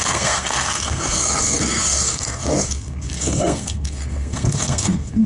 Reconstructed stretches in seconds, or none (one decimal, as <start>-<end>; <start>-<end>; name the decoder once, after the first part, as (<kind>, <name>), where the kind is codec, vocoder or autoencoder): 0.0-5.3 (codec, SNAC)